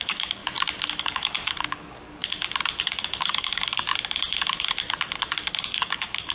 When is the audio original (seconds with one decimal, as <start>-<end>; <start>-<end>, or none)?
0.4-1.0; 2.2-2.8; 3.9-5.6